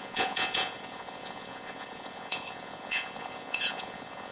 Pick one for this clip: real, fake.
fake